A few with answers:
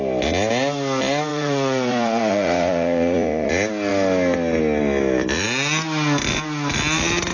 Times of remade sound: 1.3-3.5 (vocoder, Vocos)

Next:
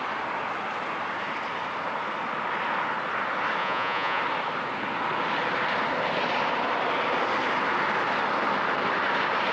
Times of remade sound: 3.6-4.2 (vocoder, Vocos)

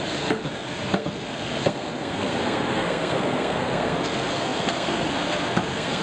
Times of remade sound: 0.0-6.0 (codec, SNAC)

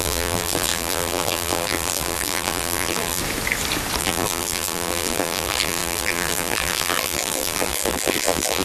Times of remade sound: 0.0-3.2 (vocoder, BigVGAN v2); 4.0-8.6